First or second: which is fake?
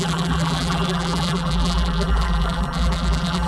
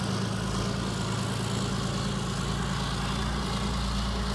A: first